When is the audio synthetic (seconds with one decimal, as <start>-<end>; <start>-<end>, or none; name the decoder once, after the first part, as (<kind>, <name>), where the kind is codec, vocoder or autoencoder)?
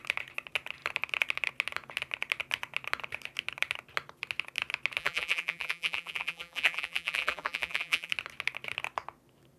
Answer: 5.0-8.1 (vocoder, BigVGAN v2)